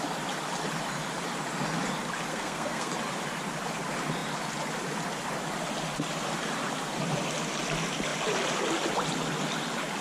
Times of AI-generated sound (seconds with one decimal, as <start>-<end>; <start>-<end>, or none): 2.3-2.9